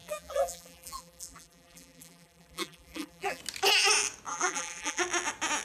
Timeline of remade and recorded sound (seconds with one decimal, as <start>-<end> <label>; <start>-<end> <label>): 0.0-3.4 remade; 3.4-4.3 recorded; 4.3-5.0 remade; 5.0-5.6 recorded